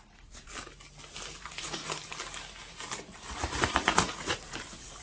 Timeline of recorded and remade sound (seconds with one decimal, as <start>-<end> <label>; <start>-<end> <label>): 0.0-0.5 remade; 0.5-1.4 recorded; 1.4-1.8 remade; 1.8-3.6 recorded; 3.6-5.0 remade